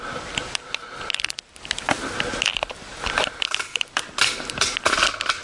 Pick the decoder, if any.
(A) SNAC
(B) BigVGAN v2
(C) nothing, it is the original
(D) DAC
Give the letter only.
C